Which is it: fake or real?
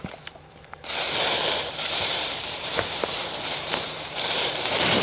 fake